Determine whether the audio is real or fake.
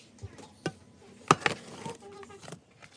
real